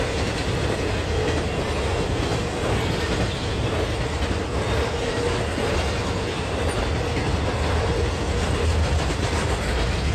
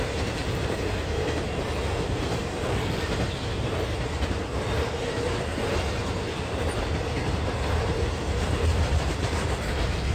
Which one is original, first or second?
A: first